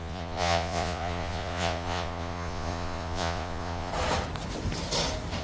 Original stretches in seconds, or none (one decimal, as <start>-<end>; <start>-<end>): 3.9-5.4